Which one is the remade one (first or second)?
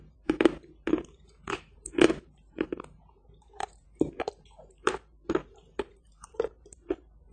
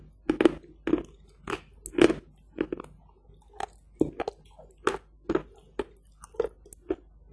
first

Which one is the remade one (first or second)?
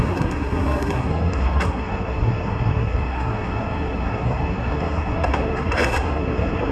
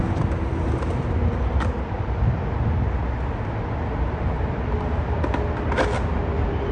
first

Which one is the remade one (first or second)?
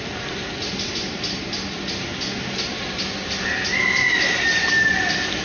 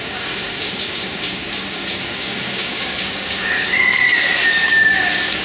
second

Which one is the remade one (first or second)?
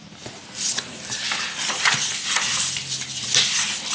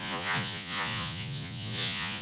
second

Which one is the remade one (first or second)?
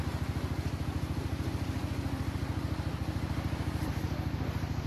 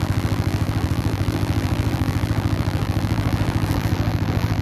second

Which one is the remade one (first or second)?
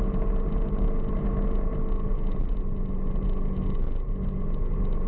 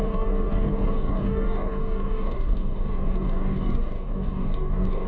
second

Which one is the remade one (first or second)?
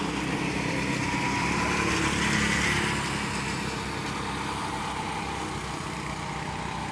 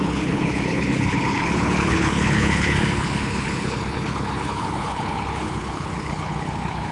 second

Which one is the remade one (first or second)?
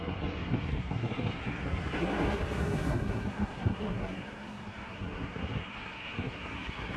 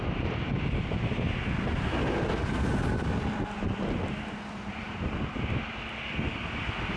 first